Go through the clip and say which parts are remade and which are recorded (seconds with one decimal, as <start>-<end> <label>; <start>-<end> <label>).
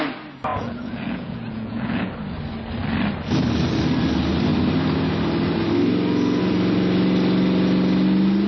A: 0.0-0.5 recorded; 0.5-2.1 remade; 2.1-8.5 recorded